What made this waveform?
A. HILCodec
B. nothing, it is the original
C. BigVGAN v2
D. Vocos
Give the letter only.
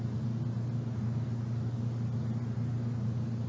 B